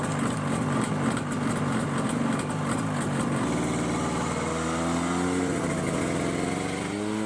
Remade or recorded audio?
recorded